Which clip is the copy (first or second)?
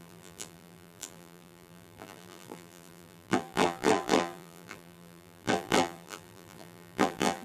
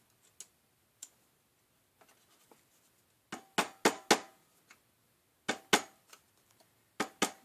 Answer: first